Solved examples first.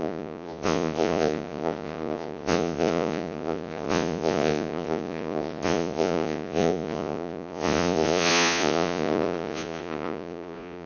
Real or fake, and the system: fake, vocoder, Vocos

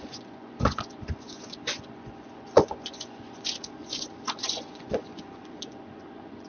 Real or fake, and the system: fake, vocoder, Vocos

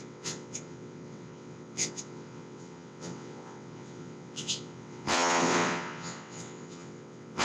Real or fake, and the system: fake, vocoder, WaveNeXt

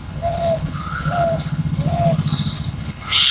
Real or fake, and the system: fake, codec, HILCodec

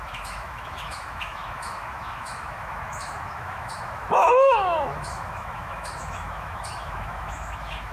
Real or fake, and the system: fake, autoencoder, DAC-VAE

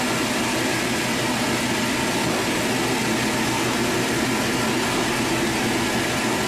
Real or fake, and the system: real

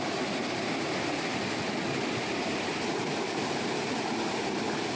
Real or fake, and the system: real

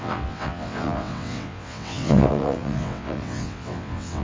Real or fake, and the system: fake, vocoder, WaveNeXt